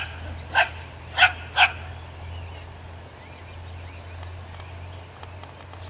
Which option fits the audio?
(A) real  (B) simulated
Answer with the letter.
A